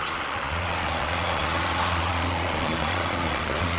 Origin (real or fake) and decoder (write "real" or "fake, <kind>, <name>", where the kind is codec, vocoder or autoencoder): fake, vocoder, Vocos